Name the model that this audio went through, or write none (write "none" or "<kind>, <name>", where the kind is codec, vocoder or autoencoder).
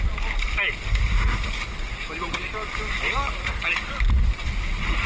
none